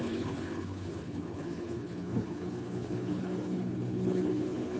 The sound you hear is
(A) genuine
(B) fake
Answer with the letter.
B